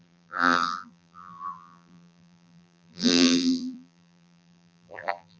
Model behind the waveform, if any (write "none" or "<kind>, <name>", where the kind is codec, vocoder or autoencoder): vocoder, BigVGAN v2